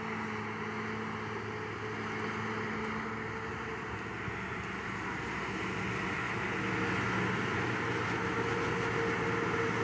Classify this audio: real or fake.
real